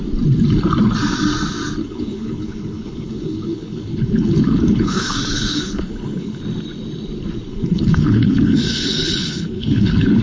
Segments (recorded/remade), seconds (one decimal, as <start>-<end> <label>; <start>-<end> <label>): 0.0-1.8 recorded; 1.8-6.4 remade; 6.4-7.5 recorded; 7.5-10.2 remade